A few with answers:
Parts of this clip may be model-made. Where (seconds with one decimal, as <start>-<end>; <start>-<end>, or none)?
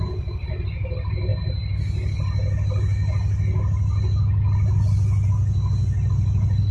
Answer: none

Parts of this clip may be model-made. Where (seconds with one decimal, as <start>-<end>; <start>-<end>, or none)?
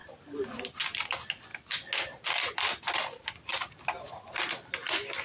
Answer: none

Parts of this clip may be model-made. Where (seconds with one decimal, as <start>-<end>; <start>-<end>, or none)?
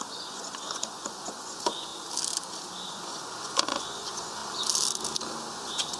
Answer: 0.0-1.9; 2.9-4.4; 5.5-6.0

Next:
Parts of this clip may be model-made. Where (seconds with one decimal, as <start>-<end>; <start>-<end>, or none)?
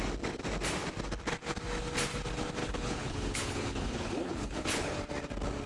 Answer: 2.6-5.0